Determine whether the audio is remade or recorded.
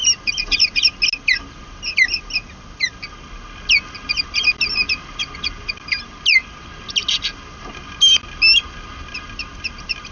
recorded